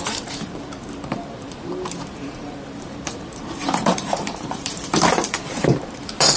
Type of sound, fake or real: fake